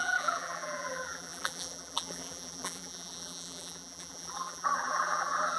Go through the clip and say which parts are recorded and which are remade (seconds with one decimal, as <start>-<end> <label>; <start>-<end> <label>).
0.0-5.6 remade